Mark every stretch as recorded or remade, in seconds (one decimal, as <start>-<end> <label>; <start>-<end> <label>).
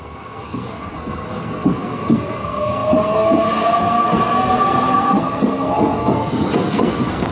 0.0-7.3 remade